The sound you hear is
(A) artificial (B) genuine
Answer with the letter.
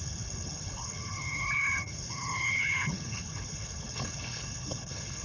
A